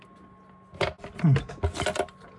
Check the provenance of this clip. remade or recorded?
recorded